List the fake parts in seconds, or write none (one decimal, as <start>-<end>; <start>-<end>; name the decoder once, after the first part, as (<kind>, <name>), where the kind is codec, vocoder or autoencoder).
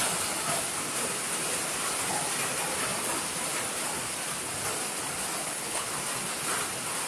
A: 5.4-5.9 (codec, HILCodec)